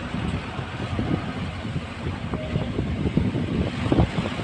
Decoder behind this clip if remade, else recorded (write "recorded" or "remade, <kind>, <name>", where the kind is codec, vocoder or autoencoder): recorded